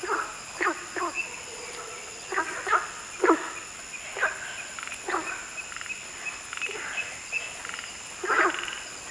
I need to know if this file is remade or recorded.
recorded